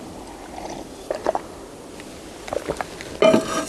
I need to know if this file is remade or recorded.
recorded